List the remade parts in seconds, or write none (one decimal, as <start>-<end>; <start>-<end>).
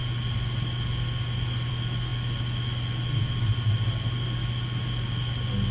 none